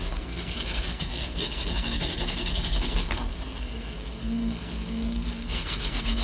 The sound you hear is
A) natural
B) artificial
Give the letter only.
B